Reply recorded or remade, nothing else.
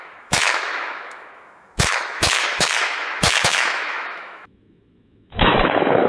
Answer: remade